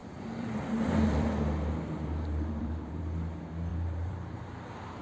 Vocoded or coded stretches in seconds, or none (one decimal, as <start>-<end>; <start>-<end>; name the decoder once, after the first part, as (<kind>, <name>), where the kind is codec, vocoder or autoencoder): 0.0-3.0 (vocoder, BigVGAN v2); 3.7-4.4